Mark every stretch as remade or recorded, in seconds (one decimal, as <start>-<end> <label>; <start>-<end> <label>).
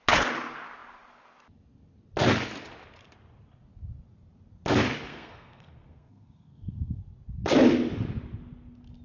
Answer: 0.0-5.1 recorded; 5.1-7.0 remade; 7.0-9.0 recorded